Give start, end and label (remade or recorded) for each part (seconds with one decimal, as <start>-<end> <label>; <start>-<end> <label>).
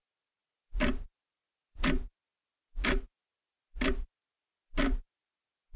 0.0-5.8 recorded